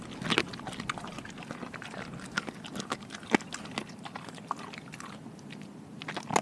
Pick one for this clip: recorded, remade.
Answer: recorded